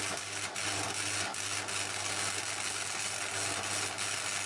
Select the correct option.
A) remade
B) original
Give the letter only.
B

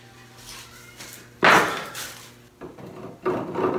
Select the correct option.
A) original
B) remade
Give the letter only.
A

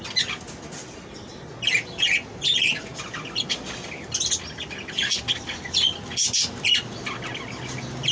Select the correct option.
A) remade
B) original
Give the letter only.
B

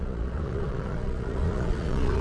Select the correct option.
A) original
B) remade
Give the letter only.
B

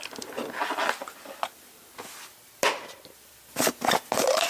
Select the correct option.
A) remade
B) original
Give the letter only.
B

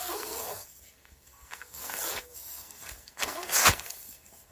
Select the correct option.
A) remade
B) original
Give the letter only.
A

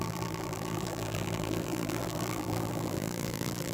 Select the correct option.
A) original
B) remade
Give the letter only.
B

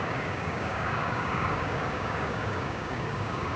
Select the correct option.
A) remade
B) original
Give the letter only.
A